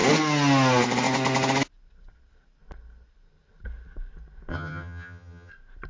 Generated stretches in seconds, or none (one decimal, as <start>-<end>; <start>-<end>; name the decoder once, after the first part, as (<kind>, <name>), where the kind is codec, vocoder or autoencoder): 4.5-5.5 (vocoder, HiFi-GAN)